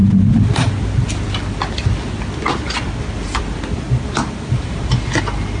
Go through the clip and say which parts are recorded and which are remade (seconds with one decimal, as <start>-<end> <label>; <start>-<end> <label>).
0.0-5.6 recorded